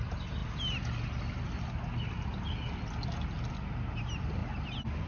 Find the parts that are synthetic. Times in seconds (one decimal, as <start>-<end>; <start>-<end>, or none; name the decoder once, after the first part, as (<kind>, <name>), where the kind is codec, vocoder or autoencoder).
4.4-5.1 (vocoder, BigVGAN v2)